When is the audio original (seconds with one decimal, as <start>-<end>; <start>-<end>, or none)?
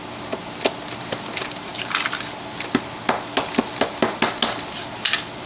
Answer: 0.0-5.5